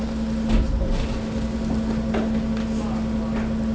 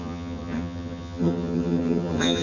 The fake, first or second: second